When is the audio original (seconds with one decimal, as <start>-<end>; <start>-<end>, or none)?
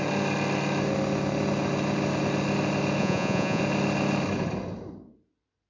0.0-3.0; 3.6-5.7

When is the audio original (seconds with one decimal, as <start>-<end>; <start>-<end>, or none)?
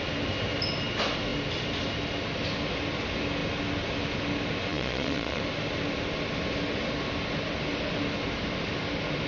0.0-4.7; 5.4-9.3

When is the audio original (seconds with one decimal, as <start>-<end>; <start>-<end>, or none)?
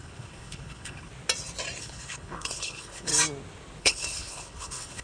1.1-1.8; 3.1-3.8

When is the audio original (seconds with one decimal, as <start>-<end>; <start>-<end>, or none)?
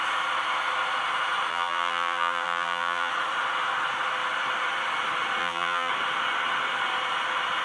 0.0-1.5; 3.1-5.4; 5.9-7.6